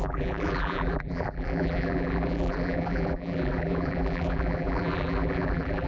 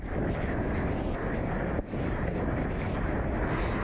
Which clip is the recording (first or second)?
second